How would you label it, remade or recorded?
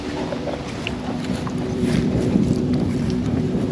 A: remade